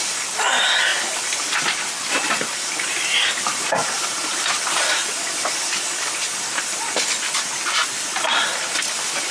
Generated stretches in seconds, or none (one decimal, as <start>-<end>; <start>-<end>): 3.8-5.7; 7.8-9.3